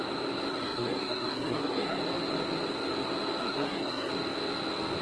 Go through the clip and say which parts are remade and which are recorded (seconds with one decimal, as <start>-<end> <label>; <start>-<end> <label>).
0.0-0.5 recorded; 0.5-2.0 remade; 2.0-3.4 recorded; 3.4-4.1 remade; 4.1-5.0 recorded